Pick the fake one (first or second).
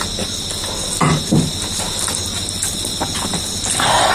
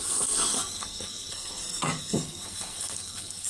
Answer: second